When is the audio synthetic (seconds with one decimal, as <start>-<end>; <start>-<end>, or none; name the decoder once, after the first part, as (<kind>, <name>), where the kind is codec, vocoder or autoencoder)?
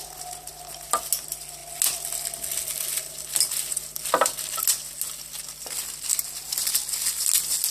none